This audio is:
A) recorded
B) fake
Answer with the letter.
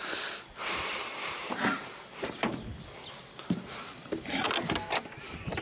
A